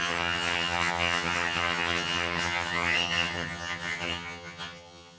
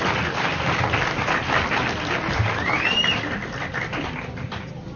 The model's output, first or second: first